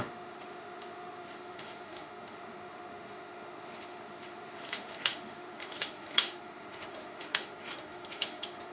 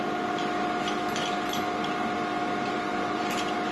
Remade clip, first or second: first